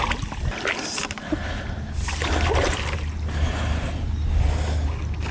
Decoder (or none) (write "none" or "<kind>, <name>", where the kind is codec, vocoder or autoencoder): none